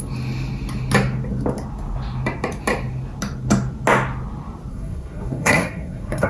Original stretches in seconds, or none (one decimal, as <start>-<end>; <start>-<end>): 0.0-4.7